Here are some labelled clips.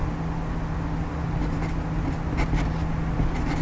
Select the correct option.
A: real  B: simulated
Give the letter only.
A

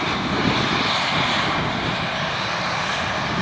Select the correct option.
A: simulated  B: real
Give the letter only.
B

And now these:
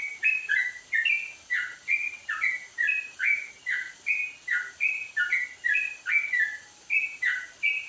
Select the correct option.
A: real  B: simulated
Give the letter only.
A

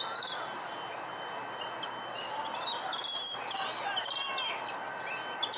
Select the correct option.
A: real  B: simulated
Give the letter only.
A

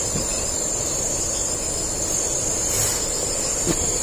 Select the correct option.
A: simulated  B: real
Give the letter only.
B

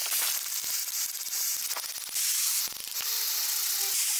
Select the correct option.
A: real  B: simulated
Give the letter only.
A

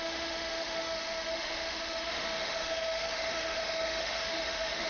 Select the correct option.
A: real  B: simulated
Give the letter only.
B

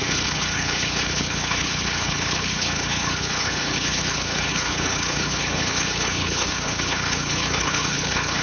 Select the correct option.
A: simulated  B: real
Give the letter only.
A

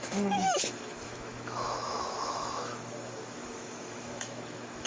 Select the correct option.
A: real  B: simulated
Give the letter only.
B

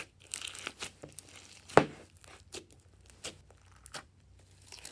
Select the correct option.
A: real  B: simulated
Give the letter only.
A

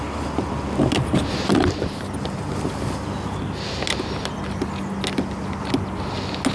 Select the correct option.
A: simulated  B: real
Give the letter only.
B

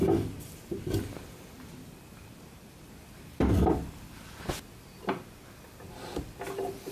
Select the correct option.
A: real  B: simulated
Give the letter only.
A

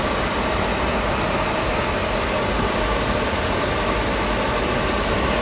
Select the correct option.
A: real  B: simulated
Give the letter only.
A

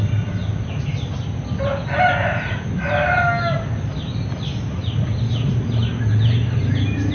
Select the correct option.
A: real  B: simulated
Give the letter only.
A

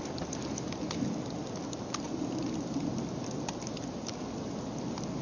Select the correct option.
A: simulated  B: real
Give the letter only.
B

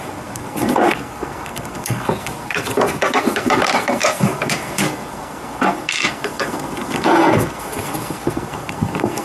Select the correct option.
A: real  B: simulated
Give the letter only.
B